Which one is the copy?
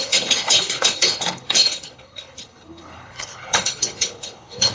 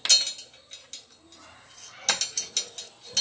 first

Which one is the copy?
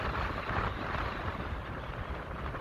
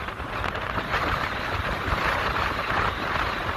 second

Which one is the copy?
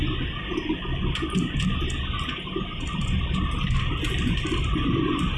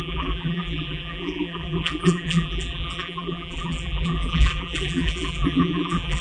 second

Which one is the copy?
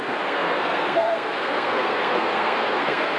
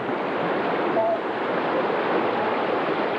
first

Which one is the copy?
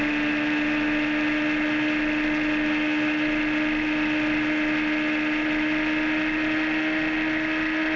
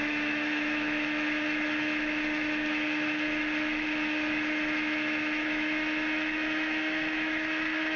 second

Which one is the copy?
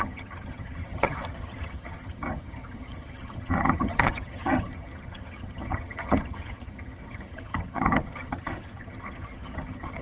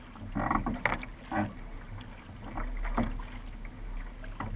first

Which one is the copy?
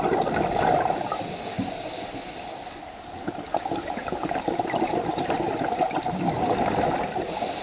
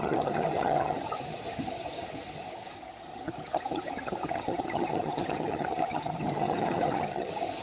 second